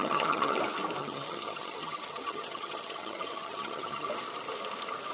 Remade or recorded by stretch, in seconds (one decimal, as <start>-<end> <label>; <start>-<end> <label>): 0.0-0.6 remade; 0.6-1.0 recorded; 1.0-4.1 remade; 4.1-5.1 recorded